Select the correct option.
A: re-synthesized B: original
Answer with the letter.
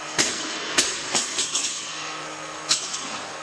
A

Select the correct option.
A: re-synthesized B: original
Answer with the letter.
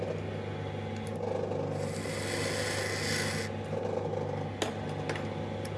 B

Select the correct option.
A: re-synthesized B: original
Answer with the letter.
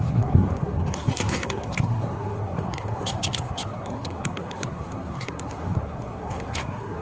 A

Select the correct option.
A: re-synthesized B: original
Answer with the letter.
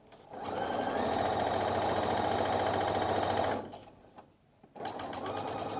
B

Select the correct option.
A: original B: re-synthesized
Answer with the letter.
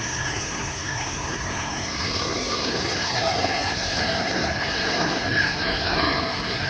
B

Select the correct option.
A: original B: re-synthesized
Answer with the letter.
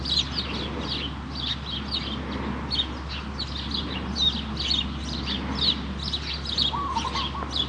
A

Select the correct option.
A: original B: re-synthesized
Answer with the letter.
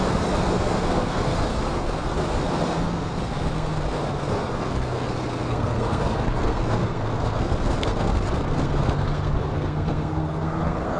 B